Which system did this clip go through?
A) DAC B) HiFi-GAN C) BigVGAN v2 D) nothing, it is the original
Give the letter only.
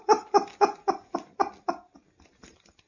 D